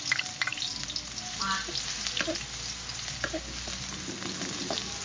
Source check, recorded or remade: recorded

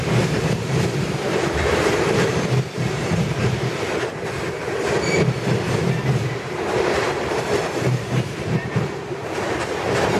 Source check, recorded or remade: remade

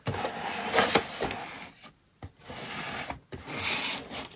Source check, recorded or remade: recorded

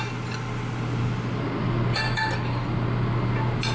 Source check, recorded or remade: recorded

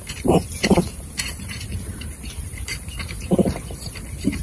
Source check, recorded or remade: remade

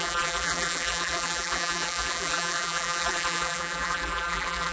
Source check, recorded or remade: remade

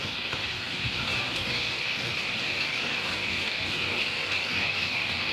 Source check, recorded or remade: remade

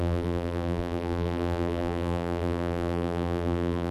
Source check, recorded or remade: remade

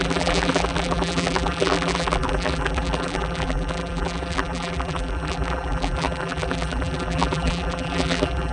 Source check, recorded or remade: remade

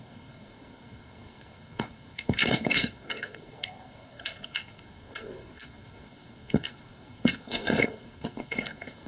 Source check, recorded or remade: remade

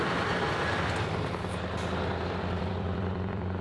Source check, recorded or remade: remade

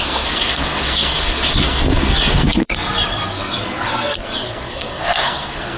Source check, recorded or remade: remade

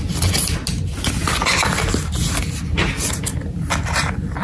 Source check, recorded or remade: recorded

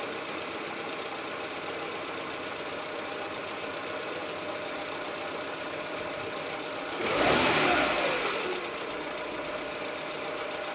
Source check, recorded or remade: recorded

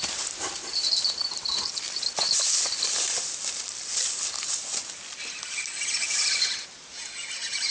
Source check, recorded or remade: recorded